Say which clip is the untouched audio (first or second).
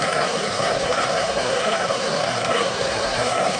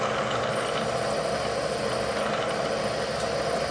second